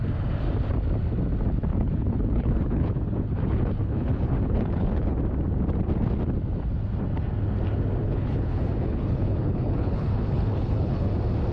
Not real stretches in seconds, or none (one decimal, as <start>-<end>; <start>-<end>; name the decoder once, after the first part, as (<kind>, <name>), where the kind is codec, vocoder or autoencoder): 1.7-5.1 (codec, HILCodec); 8.0-11.1